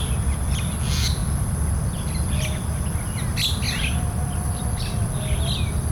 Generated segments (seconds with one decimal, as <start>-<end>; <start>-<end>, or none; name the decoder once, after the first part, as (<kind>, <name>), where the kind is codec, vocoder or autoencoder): none